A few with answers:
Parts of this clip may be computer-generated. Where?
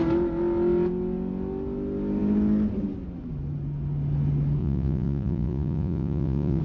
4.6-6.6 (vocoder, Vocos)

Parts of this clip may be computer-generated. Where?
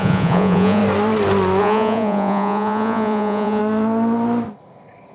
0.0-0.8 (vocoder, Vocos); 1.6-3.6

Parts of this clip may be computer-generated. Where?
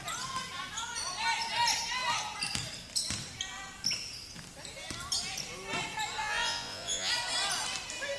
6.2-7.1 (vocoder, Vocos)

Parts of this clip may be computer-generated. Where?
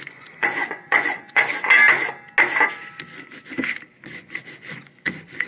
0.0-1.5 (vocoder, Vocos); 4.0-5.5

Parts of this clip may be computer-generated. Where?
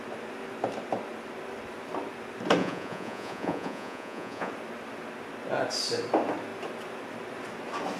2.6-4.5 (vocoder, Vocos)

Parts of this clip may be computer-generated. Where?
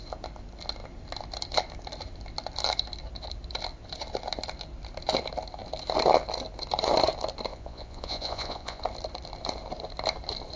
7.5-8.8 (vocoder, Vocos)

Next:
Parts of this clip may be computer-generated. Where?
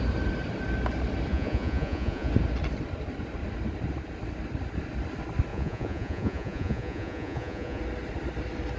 1.3-2.3 (vocoder, Vocos); 5.5-7.8